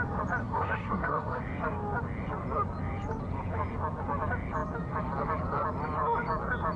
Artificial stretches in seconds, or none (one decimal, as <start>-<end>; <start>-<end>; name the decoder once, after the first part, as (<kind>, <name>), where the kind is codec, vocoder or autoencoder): 0.4-1.4 (codec, SNAC)